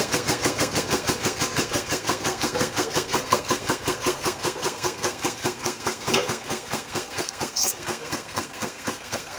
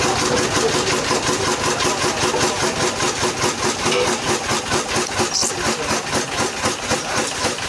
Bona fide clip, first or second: second